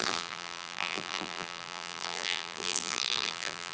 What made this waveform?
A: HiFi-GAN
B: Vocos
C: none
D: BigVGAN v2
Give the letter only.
D